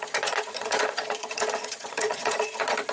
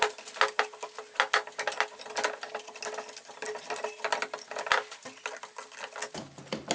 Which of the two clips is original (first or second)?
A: second